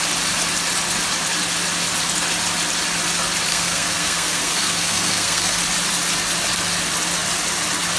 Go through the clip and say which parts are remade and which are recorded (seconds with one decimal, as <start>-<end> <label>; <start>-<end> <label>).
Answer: 0.0-3.5 recorded; 3.5-5.6 remade; 5.6-8.0 recorded